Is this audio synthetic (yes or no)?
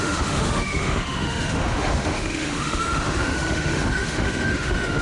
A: yes